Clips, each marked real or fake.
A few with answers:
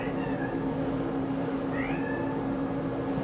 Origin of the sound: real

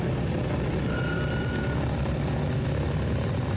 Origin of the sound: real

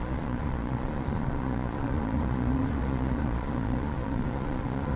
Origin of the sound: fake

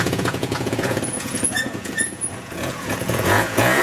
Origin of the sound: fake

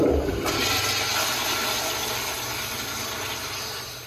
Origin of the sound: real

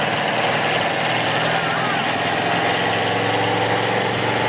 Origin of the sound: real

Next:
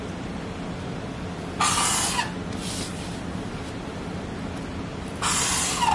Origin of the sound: real